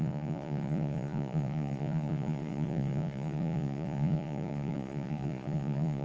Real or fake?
fake